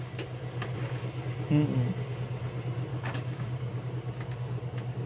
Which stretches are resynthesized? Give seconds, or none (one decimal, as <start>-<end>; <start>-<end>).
2.9-3.9